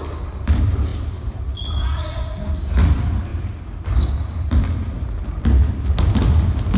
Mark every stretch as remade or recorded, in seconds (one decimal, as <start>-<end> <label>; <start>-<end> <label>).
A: 0.0-6.8 recorded